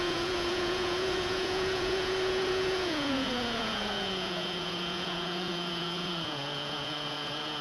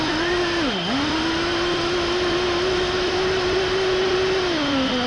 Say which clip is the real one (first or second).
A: second